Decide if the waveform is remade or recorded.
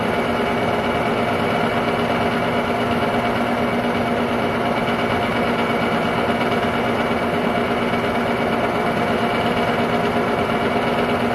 recorded